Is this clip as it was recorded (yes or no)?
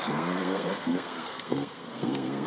no